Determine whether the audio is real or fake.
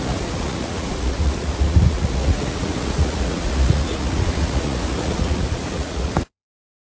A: fake